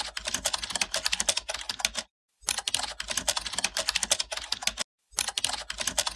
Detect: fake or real real